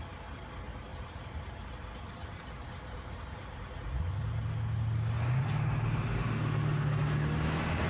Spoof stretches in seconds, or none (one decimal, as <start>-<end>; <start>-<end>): 0.9-1.7; 2.2-4.0